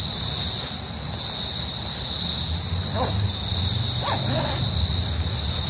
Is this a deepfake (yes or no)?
no